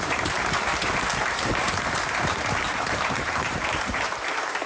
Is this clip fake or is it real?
fake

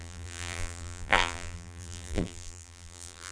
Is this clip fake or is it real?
fake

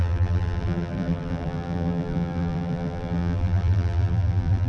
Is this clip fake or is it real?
fake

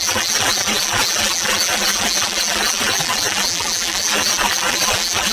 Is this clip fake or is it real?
fake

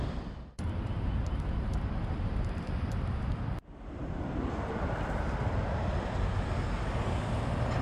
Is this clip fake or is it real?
fake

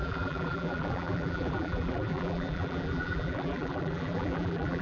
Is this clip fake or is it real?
fake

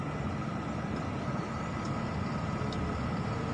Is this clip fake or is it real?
fake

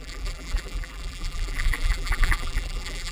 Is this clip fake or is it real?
fake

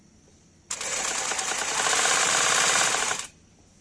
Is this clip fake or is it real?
fake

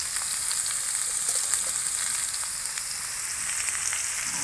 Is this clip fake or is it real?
real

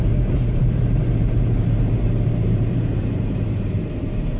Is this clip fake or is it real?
fake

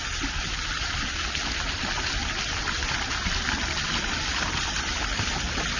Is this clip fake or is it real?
fake